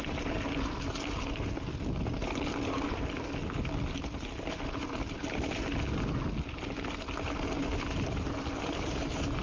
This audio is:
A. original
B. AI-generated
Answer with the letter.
A